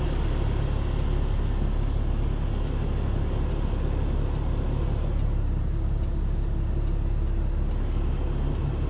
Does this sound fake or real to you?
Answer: real